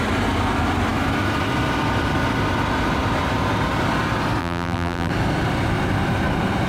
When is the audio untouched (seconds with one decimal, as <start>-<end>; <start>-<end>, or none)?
0.0-4.4; 5.1-6.7